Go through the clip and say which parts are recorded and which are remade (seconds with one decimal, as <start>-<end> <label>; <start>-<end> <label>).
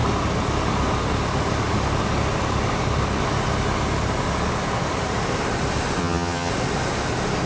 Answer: 0.0-6.0 recorded; 6.0-6.5 remade; 6.5-7.5 recorded